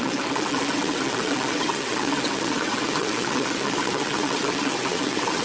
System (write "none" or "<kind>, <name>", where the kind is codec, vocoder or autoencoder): vocoder, WaveNeXt